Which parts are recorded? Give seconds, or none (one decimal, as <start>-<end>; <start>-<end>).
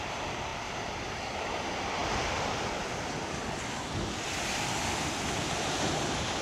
0.0-6.4